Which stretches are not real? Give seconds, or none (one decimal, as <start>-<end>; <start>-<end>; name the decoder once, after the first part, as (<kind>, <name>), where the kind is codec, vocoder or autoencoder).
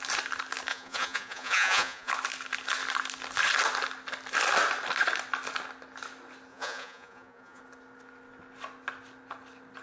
0.7-2.1 (vocoder, Vocos); 6.5-7.6